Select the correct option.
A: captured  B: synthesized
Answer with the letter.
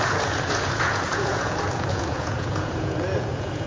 B